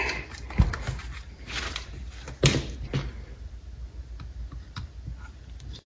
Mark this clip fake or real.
real